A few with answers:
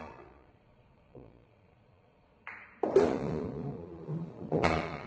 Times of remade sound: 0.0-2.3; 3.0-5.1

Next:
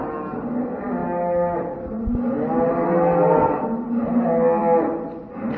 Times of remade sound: none

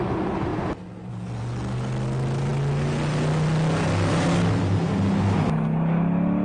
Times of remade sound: none